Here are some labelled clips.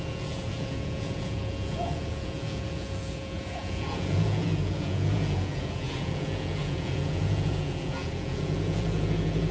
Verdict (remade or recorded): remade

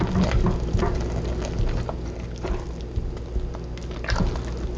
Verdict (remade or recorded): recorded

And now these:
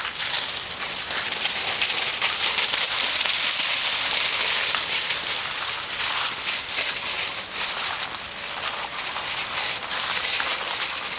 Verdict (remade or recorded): recorded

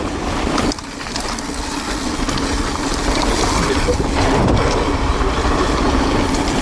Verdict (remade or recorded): recorded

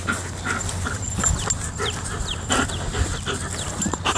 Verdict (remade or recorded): recorded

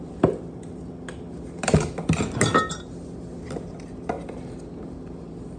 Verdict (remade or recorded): recorded